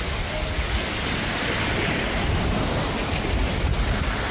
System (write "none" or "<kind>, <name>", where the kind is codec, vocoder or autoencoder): none